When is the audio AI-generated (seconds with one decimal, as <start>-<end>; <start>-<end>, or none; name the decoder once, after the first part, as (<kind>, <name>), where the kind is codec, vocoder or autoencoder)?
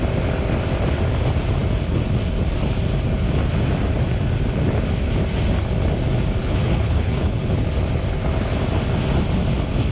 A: 6.4-7.4 (codec, HILCodec)